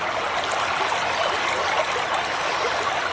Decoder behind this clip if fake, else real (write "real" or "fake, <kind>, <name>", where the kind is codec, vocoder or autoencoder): real